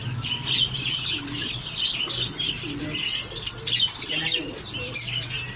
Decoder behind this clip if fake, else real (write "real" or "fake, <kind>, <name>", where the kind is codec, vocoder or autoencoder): real